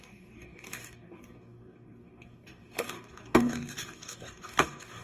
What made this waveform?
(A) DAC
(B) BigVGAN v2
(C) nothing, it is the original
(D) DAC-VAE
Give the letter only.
A